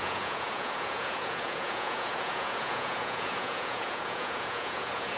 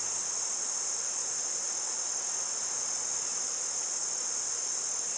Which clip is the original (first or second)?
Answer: second